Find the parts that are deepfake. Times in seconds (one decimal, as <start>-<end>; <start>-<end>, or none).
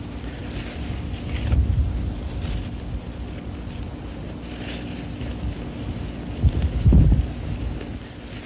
none